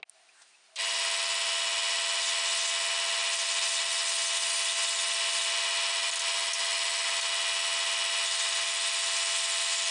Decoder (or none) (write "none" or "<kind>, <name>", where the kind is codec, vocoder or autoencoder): none